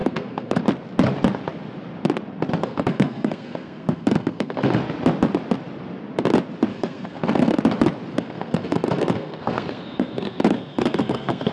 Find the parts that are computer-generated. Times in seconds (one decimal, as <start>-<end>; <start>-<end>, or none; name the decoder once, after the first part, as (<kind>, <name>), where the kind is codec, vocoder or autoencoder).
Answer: 0.0-0.6 (codec, SNAC); 2.6-4.8; 6.7-7.6; 8.1-11.5